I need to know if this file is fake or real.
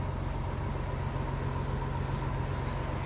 real